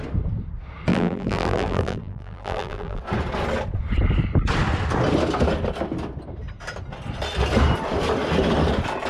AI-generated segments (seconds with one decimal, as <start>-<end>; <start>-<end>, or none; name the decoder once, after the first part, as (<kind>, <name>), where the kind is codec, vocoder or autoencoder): 0.9-3.0 (vocoder, BigVGAN v2)

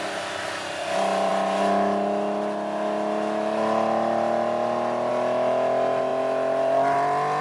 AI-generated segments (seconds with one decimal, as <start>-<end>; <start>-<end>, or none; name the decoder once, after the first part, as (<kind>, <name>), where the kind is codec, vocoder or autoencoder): 0.0-1.3 (vocoder, BigVGAN v2); 5.1-7.4